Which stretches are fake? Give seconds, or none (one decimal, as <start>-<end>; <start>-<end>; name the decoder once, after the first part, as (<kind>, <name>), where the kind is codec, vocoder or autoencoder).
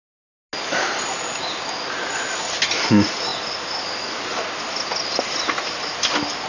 none